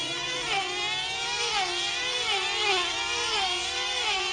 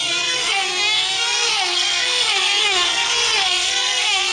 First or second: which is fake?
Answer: second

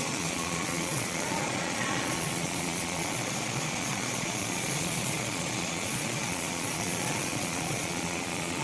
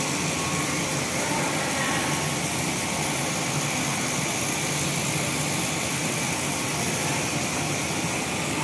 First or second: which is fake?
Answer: first